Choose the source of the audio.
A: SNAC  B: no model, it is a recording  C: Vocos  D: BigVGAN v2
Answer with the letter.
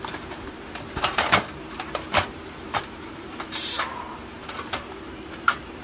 D